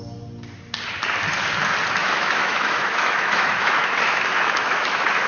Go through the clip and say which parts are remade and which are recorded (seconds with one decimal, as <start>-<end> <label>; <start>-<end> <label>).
0.0-2.0 recorded; 2.0-5.3 remade